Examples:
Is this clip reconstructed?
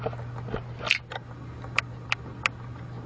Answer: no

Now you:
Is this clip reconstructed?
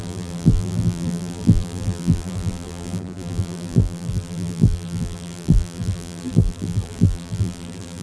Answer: yes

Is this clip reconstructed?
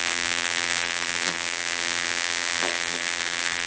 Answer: yes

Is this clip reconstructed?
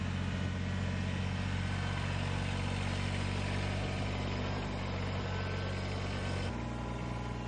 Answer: no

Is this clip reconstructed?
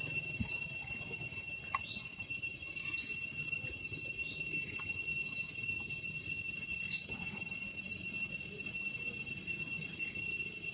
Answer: no